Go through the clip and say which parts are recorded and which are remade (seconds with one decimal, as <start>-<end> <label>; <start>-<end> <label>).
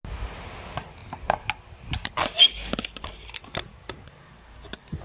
0.0-5.0 recorded